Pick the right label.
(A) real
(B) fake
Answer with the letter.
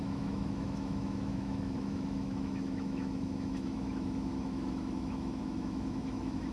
B